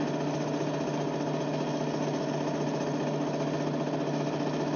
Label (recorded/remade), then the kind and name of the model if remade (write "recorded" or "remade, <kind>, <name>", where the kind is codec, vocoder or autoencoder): recorded